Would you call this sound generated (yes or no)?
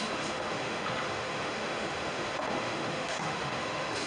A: yes